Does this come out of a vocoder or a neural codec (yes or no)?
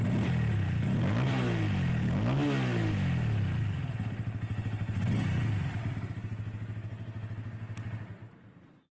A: no